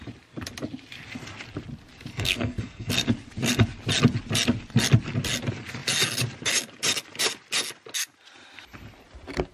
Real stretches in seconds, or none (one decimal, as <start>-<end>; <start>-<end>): 0.0-2.1; 2.9-9.5